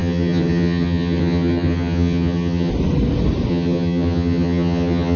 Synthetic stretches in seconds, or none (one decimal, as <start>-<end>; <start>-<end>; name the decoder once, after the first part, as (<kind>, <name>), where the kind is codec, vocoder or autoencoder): 0.0-2.7 (vocoder, HiFi-GAN); 3.5-5.2